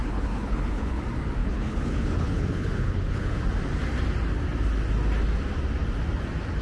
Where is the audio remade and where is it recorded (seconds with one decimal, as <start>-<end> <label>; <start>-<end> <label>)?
0.0-1.0 remade; 1.0-1.4 recorded; 1.4-3.4 remade; 3.4-6.6 recorded